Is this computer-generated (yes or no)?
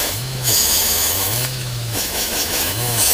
yes